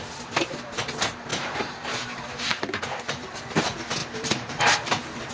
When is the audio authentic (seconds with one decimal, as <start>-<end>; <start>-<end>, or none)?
0.0-1.3; 3.4-4.0